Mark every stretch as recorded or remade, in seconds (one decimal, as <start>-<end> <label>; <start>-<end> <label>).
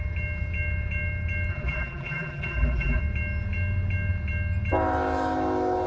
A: 0.0-1.5 recorded; 1.5-3.0 remade; 3.0-5.9 recorded